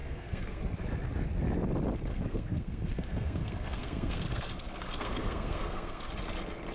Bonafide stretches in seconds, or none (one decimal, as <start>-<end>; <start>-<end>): 0.6-2.1; 6.1-6.7